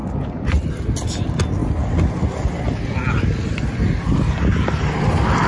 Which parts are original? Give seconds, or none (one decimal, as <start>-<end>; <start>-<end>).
0.0-5.5